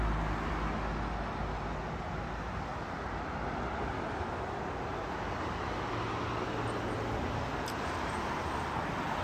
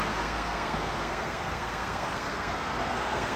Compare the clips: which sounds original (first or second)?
first